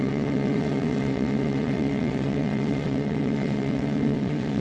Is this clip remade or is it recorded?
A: remade